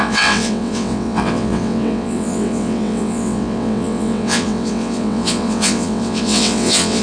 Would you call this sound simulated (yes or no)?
yes